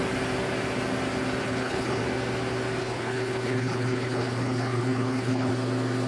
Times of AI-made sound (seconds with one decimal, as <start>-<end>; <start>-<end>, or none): 1.4-2.0; 2.8-5.5